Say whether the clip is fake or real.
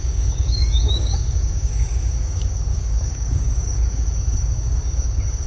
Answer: fake